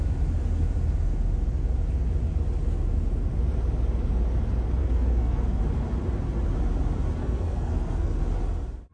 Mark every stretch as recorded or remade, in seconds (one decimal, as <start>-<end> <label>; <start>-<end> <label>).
0.0-4.8 recorded; 4.8-5.6 remade; 5.6-7.2 recorded; 7.2-8.2 remade; 8.2-8.9 recorded